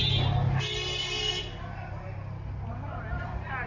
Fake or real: real